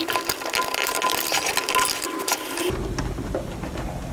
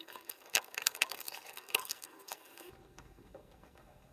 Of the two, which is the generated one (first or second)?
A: second